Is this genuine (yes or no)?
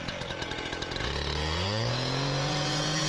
no